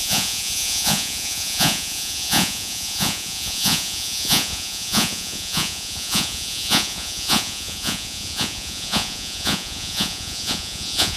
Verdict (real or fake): fake